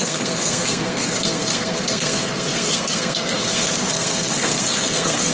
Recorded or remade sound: remade